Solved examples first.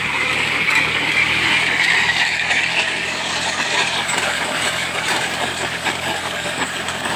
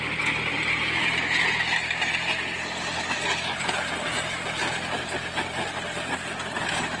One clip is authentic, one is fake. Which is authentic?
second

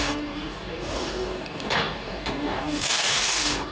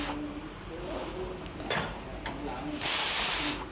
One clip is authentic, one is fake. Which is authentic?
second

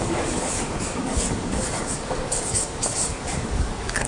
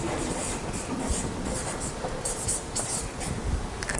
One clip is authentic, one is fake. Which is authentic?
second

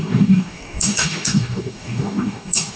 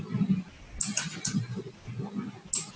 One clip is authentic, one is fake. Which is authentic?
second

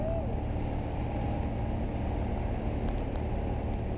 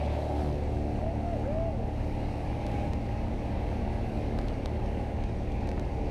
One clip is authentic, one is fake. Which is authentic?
first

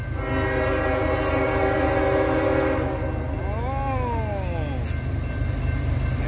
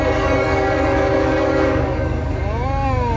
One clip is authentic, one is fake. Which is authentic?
first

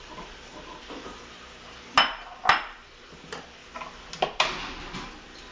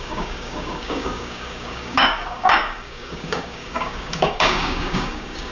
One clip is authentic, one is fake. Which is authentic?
first